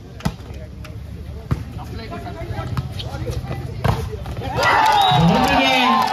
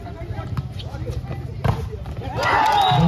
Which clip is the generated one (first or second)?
second